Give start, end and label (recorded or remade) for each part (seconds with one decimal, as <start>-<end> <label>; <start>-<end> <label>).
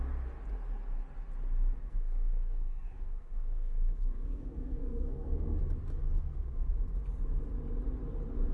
0.0-1.8 recorded; 1.8-5.6 remade; 5.6-6.2 recorded; 6.2-6.8 remade; 6.8-8.5 recorded